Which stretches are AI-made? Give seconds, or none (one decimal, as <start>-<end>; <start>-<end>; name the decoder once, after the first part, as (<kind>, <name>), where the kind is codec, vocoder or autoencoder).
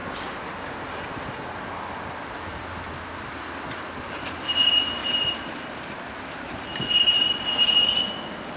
5.0-6.8 (vocoder, BigVGAN v2)